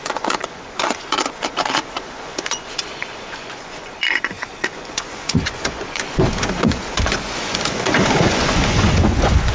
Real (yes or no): no